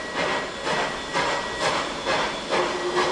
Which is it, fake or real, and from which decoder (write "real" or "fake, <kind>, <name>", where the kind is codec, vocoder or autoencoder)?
real